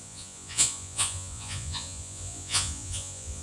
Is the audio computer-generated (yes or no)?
yes